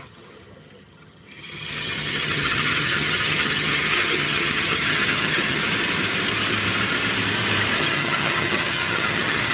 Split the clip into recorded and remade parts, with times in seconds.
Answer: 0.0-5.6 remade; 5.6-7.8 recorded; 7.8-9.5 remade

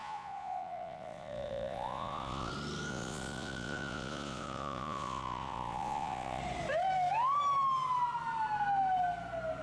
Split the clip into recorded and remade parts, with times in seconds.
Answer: 0.0-2.5 remade; 2.5-2.9 recorded; 2.9-6.4 remade; 6.4-9.6 recorded

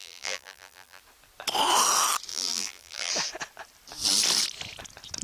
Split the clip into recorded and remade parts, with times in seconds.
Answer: 0.0-1.0 remade; 1.0-2.3 recorded; 2.3-3.1 remade; 3.1-5.2 recorded

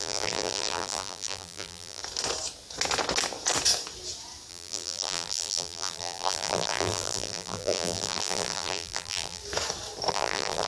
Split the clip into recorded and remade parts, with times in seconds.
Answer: 0.0-2.0 remade; 2.0-4.5 recorded; 4.5-9.4 remade; 9.4-10.1 recorded; 10.1-10.7 remade